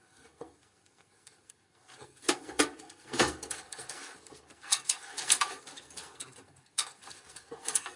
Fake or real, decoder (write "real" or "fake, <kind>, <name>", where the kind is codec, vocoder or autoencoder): fake, codec, SNAC